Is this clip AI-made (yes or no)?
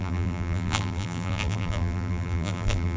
yes